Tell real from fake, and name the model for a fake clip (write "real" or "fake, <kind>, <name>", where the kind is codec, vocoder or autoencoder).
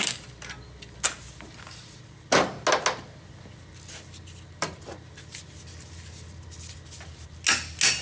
real